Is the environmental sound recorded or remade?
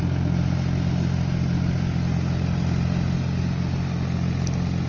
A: recorded